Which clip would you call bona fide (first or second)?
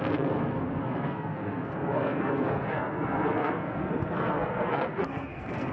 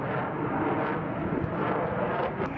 second